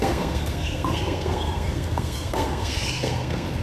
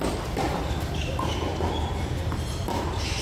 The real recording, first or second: second